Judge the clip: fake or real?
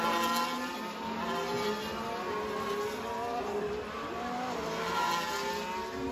real